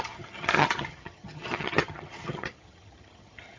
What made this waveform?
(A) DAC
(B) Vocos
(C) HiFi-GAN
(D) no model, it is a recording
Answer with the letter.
C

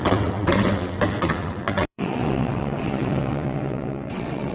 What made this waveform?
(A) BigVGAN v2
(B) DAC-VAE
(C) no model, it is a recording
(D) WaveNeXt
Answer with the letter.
D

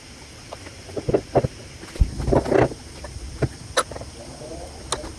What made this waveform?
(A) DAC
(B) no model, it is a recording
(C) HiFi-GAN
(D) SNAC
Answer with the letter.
B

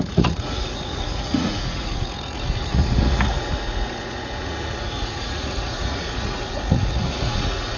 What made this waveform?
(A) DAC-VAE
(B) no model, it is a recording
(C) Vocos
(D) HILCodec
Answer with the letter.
C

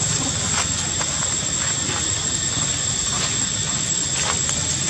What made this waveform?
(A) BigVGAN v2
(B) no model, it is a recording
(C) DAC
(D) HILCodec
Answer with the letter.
B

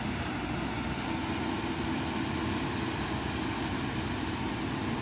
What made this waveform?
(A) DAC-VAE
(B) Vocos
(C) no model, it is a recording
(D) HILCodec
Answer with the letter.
C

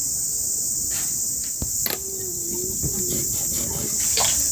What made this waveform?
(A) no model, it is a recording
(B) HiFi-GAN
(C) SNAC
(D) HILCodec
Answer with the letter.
A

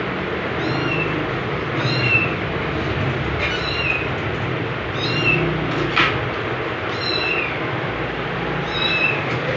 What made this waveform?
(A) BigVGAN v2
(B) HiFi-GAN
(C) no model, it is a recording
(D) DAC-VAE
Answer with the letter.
C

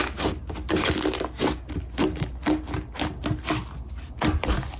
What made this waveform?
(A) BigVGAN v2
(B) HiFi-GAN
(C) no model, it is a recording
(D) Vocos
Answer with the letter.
C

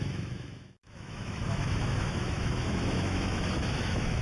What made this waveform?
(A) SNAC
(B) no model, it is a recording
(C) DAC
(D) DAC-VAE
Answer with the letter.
D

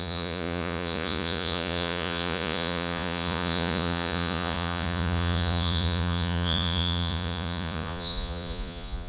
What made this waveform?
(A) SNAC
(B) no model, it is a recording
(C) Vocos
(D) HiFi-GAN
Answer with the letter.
C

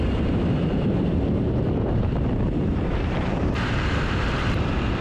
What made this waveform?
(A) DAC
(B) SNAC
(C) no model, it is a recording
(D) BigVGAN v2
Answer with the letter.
D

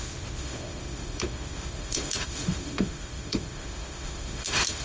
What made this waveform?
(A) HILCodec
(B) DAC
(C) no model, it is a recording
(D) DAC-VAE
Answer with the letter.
D